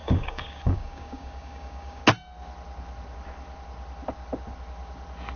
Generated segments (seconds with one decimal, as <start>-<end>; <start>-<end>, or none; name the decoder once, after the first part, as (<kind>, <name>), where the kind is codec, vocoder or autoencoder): 0.0-2.0 (codec, DAC)